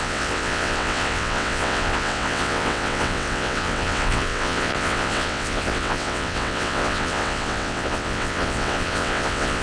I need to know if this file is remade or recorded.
remade